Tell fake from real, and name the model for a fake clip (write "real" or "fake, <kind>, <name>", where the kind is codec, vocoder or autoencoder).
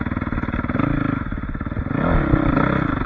real